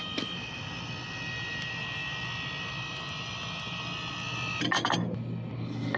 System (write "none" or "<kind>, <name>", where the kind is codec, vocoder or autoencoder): none